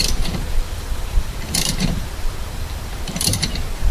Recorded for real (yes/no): no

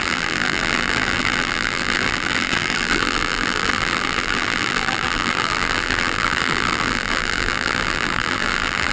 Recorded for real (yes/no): no